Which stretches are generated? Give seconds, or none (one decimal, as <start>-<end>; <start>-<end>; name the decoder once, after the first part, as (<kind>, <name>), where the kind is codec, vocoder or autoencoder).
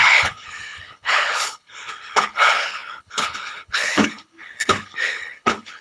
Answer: 0.0-5.8 (codec, HILCodec)